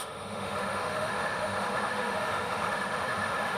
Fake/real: fake